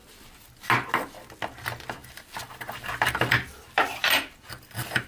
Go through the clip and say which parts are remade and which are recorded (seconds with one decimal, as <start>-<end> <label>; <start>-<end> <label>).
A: 0.0-2.0 recorded; 2.0-5.1 remade